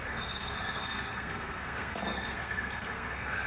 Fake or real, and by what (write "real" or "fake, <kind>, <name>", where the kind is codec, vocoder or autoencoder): fake, codec, SNAC